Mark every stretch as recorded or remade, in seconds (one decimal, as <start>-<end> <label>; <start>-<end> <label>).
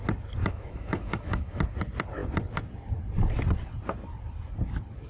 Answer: 0.0-0.4 recorded; 0.4-1.6 remade; 1.6-5.1 recorded